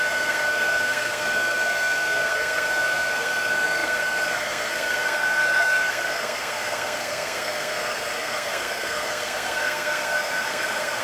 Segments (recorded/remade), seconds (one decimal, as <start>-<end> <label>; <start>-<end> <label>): 0.0-11.0 remade